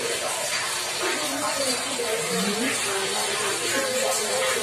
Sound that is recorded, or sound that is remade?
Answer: remade